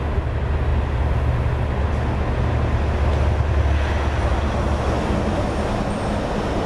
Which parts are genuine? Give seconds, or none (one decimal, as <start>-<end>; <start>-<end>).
0.0-6.7